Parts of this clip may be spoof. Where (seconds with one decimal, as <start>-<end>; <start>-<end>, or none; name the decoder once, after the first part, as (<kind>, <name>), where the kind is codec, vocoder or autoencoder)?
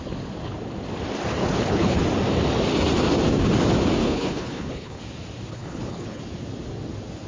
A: 1.4-2.0 (codec, HILCodec); 4.0-5.0; 5.5-6.2